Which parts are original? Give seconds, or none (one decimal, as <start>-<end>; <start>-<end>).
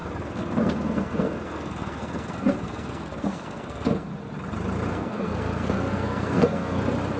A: 4.1-4.9; 6.8-7.2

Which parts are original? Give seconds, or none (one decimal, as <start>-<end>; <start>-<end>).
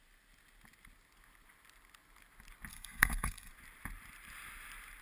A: 0.0-2.7; 3.5-5.0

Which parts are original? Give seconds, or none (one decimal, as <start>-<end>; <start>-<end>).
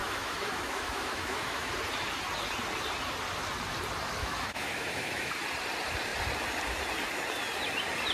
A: 1.7-4.2; 5.3-8.1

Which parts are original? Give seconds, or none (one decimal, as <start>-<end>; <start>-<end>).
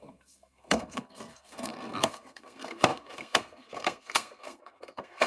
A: none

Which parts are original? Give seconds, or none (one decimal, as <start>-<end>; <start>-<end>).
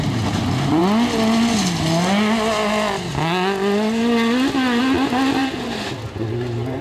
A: 0.0-6.8